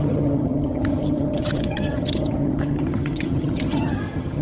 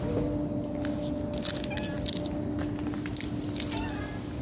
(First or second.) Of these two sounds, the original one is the second